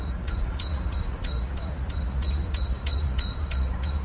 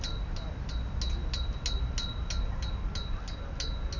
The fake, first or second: first